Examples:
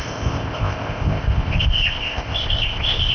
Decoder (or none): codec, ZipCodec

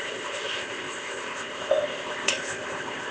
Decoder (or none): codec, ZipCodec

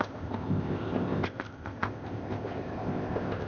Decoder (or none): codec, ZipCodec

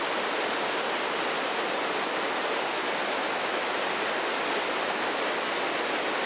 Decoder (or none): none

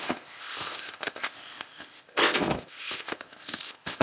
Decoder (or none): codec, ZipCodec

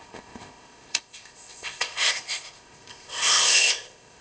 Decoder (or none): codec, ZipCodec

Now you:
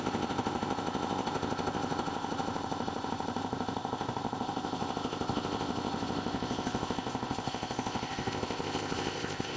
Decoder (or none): codec, ZipCodec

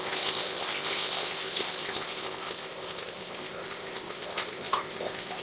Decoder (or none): codec, ZipCodec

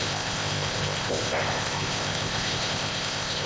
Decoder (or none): codec, ZipCodec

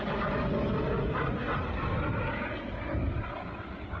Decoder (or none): none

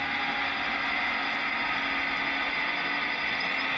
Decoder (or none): none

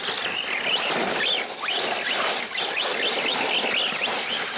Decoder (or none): none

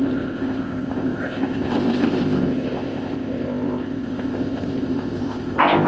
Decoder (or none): codec, ZipCodec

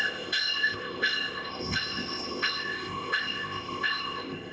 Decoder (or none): codec, ZipCodec